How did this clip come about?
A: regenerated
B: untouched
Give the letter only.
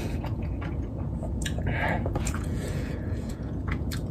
A